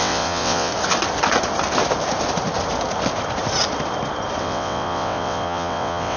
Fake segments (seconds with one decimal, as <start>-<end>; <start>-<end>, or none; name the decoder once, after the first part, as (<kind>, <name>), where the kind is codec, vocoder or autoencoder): 0.0-0.7 (vocoder, WaveNeXt); 4.4-6.2